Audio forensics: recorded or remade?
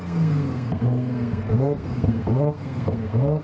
remade